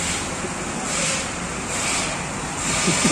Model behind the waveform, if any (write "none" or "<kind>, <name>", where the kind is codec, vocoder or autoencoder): none